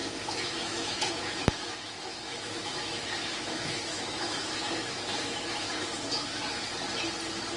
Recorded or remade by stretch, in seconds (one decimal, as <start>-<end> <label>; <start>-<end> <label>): 0.0-6.7 remade; 6.7-7.6 recorded

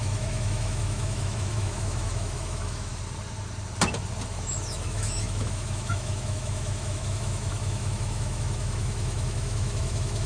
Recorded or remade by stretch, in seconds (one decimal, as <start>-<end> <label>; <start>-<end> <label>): 0.0-2.9 remade; 2.9-4.3 recorded; 4.3-10.3 remade

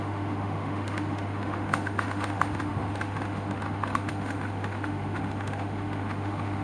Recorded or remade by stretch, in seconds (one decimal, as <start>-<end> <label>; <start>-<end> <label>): 0.0-6.6 remade

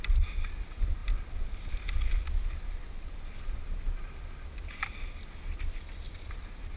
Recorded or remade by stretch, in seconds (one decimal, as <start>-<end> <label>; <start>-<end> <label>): 0.0-6.8 recorded

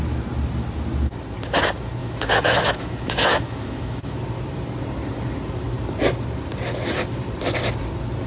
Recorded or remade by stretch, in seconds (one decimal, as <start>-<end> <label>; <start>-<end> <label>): 0.0-2.0 recorded; 2.0-4.2 remade; 4.2-8.3 recorded

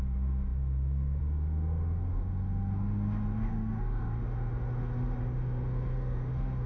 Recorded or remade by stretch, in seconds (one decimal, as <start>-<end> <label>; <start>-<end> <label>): 0.0-6.7 remade

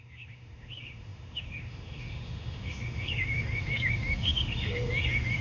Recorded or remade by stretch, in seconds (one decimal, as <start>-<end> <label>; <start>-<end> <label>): 0.0-5.4 remade

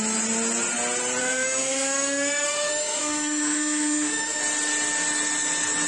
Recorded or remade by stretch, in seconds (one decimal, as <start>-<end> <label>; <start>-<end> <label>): 0.0-1.2 recorded; 1.2-4.4 remade; 4.4-5.9 recorded